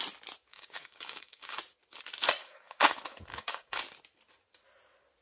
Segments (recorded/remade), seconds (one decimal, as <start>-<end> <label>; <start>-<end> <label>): 0.0-0.5 recorded; 0.5-1.6 remade; 1.6-2.4 recorded; 2.4-2.9 remade; 2.9-3.3 recorded; 3.3-3.8 remade; 3.8-5.2 recorded